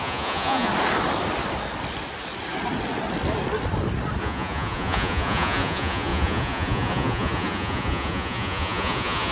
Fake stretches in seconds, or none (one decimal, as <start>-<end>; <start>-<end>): 0.0-0.7; 4.2-9.3